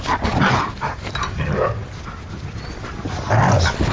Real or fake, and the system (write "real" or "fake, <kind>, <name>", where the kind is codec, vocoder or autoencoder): real